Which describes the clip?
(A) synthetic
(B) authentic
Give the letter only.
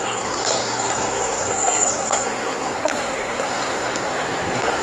A